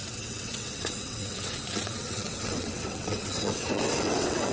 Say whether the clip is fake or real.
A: fake